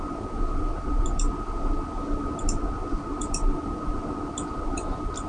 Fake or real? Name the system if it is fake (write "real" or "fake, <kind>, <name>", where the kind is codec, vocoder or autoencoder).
real